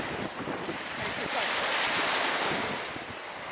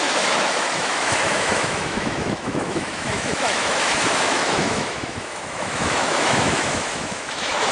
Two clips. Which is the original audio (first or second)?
first